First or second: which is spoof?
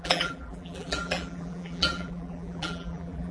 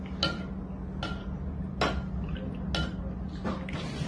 first